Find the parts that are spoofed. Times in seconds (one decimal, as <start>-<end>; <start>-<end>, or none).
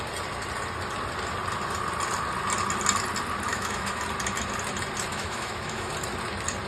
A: 3.5-4.0; 5.1-5.9